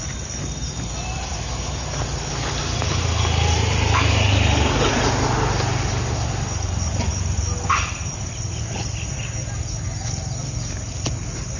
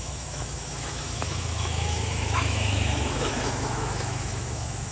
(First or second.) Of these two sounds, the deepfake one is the second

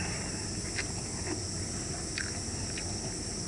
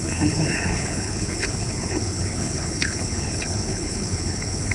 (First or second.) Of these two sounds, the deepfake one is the second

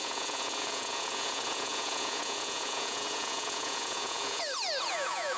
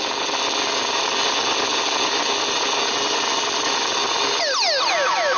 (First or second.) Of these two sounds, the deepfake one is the first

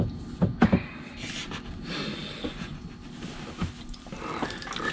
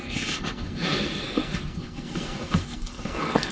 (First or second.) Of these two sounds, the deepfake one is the second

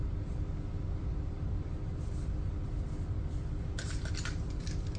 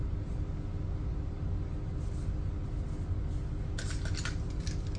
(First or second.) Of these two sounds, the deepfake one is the first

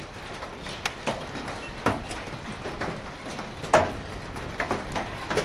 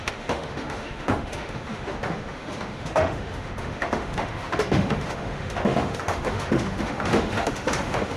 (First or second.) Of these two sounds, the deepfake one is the second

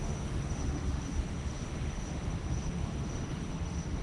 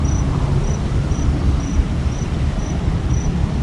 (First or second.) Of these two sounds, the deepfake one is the first